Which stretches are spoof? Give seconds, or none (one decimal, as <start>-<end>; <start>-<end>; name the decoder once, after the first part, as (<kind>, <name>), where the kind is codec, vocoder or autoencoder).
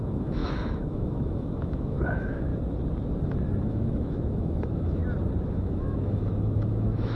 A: 0.0-2.5 (autoencoder, DAC-VAE); 3.6-5.0; 5.5-7.2